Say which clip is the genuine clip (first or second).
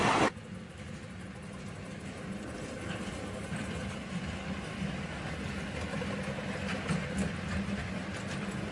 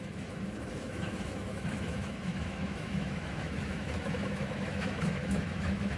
first